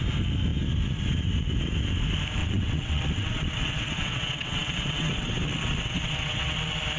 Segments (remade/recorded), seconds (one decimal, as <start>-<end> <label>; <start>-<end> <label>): 0.0-2.4 recorded; 2.4-6.6 remade; 6.6-7.0 recorded